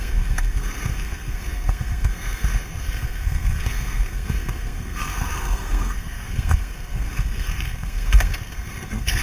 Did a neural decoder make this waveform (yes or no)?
yes